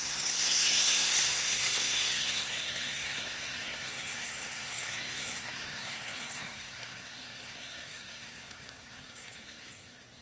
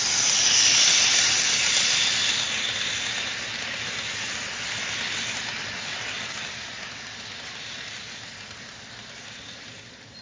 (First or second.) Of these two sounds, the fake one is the first